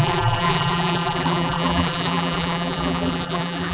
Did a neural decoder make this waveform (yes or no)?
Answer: yes